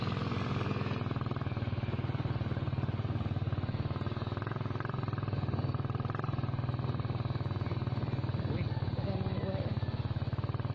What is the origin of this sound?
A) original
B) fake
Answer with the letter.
A